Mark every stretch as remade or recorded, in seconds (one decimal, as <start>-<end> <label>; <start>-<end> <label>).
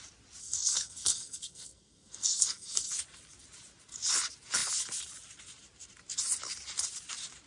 0.0-0.4 recorded; 0.4-2.9 remade; 2.9-7.5 recorded